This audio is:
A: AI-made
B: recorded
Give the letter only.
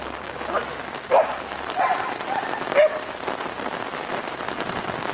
B